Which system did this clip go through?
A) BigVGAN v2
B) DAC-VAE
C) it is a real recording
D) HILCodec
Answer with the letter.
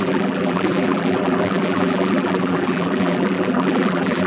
A